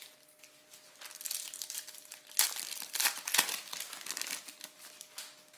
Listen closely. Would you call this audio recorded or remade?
recorded